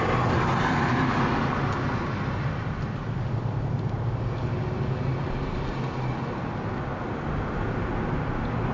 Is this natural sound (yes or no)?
yes